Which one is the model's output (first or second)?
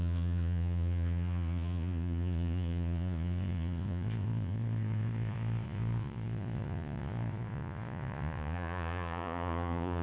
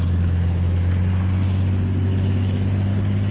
first